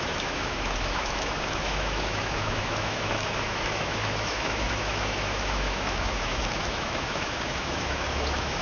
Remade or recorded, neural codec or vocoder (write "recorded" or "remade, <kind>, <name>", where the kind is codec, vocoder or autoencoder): remade, autoencoder, DAC-VAE